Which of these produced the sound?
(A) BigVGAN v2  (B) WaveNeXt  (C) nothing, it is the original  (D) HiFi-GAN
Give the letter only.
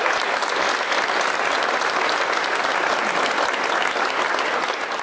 C